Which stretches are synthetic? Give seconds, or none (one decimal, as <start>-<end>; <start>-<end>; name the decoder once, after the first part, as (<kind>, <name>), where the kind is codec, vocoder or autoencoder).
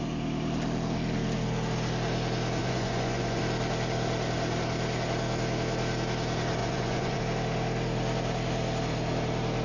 2.6-3.4 (vocoder, Vocos); 6.6-7.2